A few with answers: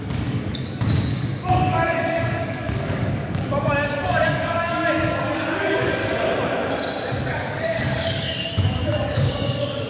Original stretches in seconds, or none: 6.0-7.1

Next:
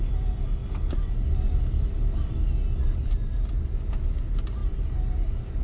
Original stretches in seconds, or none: 0.0-5.6

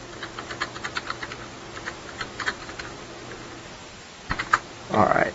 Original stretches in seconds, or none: 0.0-5.3

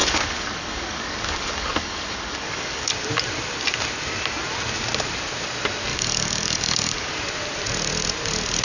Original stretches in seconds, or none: 2.9-5.9; 7.1-8.6

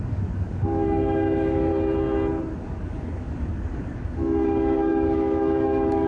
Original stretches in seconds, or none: 1.7-2.5

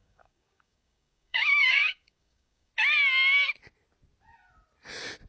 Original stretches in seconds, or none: 2.7-5.3